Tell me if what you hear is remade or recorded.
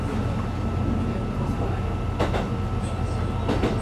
recorded